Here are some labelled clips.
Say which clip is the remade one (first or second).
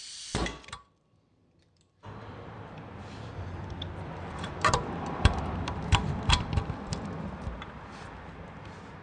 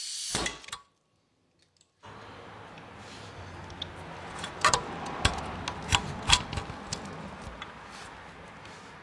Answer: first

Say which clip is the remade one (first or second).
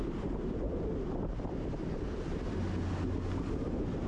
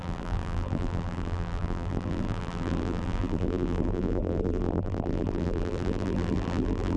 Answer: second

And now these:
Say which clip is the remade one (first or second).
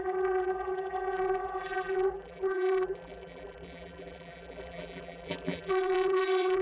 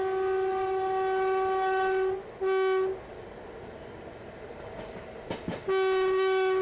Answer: first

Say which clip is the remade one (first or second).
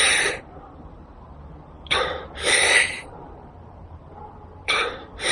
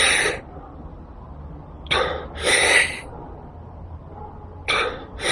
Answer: first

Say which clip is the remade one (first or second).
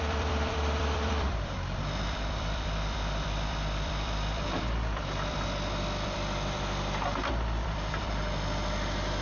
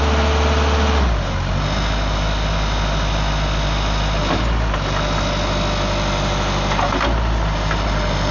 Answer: first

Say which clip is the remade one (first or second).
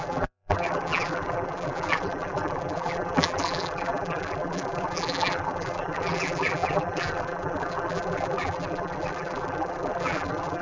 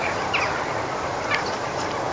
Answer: first